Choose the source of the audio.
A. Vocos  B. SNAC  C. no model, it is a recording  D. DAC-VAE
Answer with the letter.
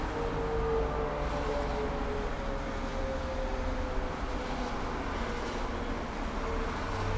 C